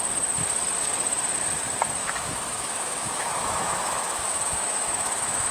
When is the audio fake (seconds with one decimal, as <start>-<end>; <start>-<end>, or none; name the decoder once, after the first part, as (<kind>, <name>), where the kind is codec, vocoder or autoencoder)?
2.0-5.5 (autoencoder, DAC-VAE)